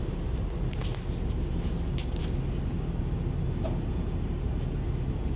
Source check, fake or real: real